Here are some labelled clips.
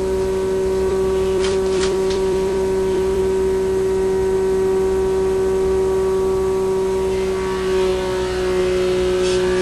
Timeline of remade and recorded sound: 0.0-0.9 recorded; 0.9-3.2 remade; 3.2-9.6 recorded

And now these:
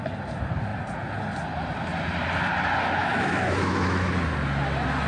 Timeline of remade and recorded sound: 0.0-3.0 recorded; 3.0-4.1 remade; 4.1-5.1 recorded

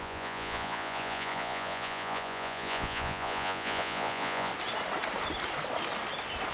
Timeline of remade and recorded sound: 0.0-4.5 remade; 4.5-6.5 recorded

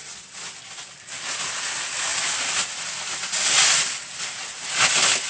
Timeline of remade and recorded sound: 0.0-5.3 recorded

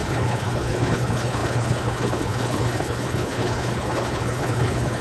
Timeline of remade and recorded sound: 0.0-5.0 remade